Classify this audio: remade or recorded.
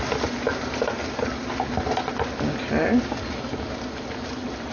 recorded